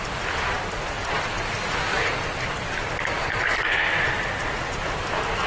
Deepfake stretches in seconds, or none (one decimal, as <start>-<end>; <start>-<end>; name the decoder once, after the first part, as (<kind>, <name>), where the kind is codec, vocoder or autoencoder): 0.0-5.5 (vocoder, BigVGAN v2)